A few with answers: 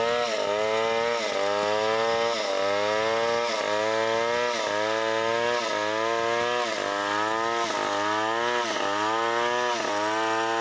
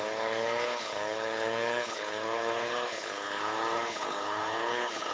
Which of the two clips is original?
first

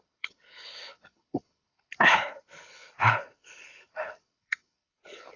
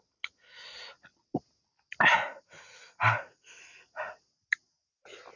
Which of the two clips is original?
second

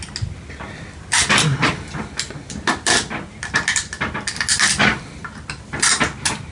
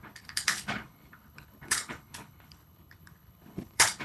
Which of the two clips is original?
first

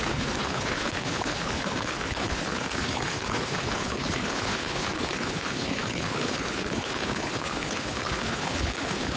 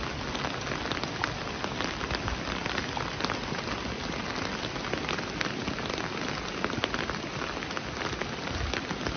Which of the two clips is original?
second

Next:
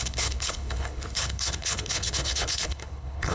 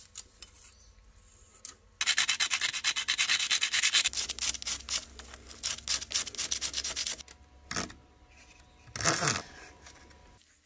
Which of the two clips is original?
second